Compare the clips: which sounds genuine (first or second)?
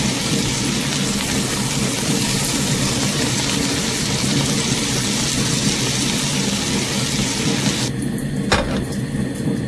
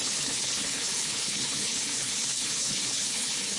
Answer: first